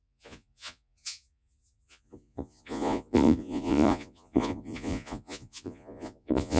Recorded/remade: remade